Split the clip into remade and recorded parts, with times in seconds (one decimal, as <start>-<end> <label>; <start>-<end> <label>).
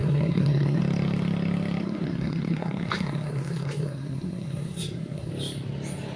0.0-0.8 remade; 0.8-1.8 recorded; 1.8-5.3 remade; 5.3-6.2 recorded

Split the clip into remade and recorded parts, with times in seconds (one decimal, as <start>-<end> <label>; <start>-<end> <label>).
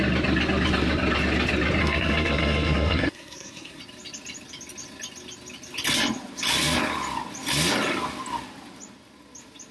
0.0-1.8 recorded; 1.8-3.8 remade; 3.8-9.7 recorded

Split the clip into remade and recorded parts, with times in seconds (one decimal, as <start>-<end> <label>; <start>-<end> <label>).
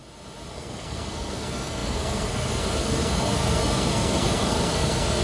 0.0-0.5 recorded; 0.5-5.2 remade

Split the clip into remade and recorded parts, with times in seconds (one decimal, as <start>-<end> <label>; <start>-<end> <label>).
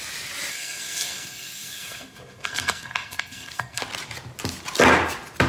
0.0-0.5 recorded; 0.5-3.8 remade; 3.8-5.5 recorded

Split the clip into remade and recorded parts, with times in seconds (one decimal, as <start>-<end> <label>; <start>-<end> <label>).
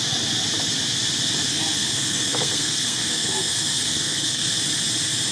0.0-1.5 recorded; 1.5-4.6 remade; 4.6-5.3 recorded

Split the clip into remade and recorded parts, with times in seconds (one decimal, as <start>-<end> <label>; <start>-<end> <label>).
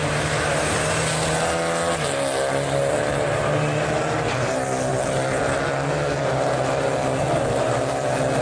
0.0-8.4 recorded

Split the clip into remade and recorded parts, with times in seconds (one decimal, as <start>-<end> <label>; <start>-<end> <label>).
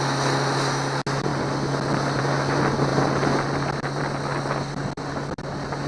0.0-5.9 recorded